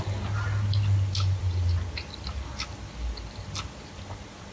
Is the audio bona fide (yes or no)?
yes